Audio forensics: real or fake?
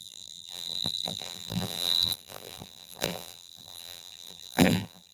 fake